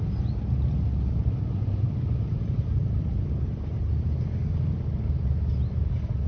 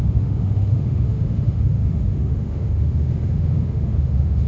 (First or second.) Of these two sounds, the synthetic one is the second